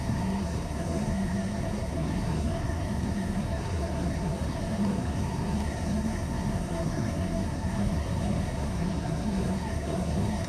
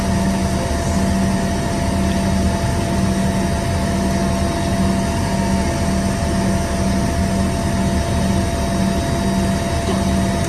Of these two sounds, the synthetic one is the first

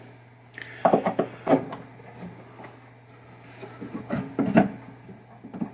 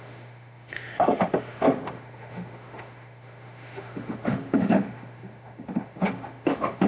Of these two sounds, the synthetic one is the second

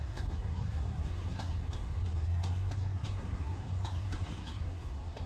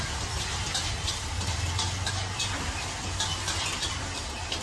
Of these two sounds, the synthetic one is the first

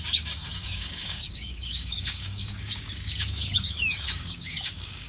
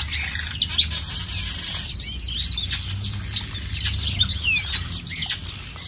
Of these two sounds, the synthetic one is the first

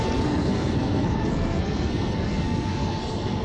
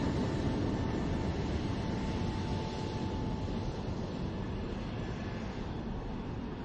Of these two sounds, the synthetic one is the first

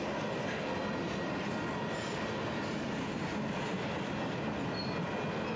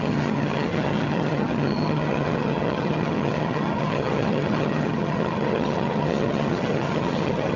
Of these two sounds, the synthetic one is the second